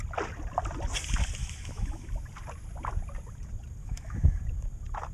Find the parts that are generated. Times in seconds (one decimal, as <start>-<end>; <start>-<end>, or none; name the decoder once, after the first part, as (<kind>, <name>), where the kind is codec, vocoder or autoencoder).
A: 1.4-2.1 (autoencoder, DAC-VAE); 3.8-4.4